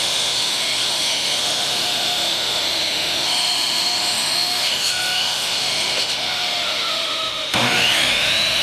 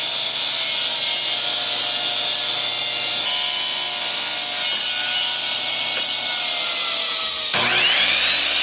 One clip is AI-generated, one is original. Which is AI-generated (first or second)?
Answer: first